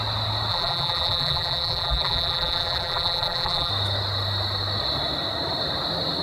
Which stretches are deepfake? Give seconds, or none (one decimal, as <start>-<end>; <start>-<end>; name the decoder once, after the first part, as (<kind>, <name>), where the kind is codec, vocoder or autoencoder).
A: 0.5-3.7 (vocoder, BigVGAN v2)